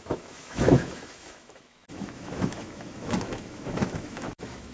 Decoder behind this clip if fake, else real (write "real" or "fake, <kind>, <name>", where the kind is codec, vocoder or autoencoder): fake, autoencoder, DAC-VAE